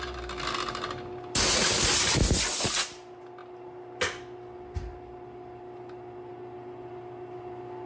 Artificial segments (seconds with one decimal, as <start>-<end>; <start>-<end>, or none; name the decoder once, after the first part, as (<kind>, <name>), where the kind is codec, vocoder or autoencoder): none